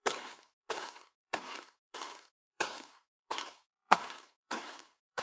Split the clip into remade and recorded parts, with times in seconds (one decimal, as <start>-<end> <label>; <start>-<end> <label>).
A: 0.0-5.2 remade